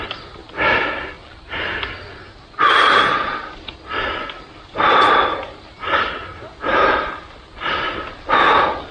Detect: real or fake real